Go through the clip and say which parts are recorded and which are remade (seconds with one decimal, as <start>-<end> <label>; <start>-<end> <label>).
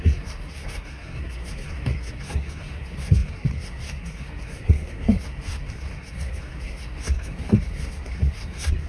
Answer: 0.0-8.9 remade